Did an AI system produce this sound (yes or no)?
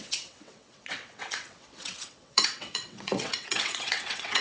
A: yes